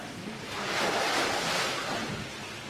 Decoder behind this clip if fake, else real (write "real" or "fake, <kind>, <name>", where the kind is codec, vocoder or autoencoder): real